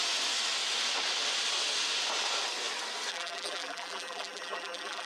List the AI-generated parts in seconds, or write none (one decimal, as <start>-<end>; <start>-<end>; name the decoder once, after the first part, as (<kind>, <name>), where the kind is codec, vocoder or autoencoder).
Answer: 3.1-5.1 (vocoder, BigVGAN v2)